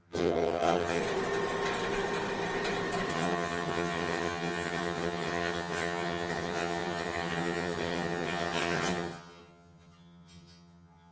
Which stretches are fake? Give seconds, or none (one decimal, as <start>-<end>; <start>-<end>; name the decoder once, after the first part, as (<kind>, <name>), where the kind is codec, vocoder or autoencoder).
0.0-1.0 (vocoder, HiFi-GAN); 3.1-11.1